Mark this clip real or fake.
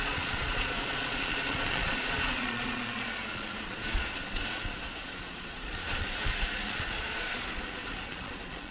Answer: fake